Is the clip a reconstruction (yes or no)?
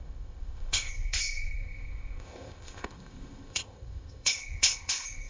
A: yes